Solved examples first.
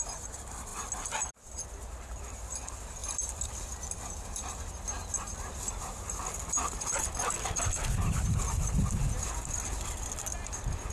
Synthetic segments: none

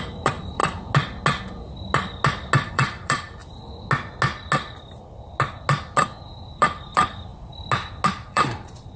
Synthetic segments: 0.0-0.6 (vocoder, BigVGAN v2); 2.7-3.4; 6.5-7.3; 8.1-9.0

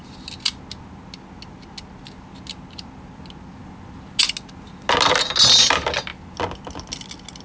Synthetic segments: none